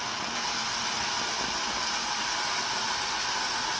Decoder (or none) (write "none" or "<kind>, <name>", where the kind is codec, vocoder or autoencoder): none